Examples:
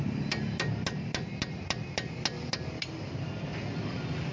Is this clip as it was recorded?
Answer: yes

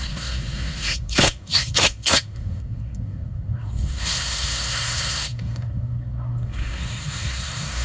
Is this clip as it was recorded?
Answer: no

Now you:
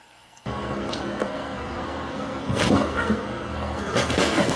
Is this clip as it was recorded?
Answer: no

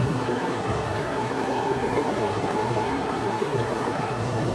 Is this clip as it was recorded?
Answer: no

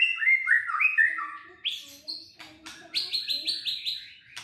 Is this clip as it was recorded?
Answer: yes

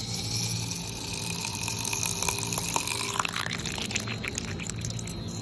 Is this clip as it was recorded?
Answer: yes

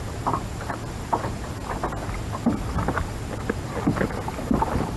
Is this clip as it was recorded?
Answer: yes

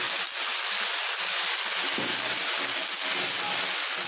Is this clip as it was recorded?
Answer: yes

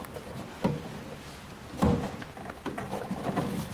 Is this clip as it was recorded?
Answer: yes